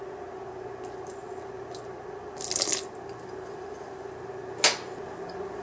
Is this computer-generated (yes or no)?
no